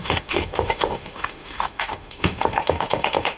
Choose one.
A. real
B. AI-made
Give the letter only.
B